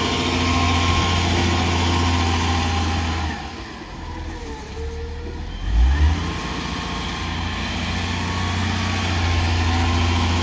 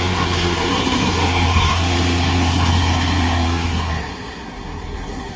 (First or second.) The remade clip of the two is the second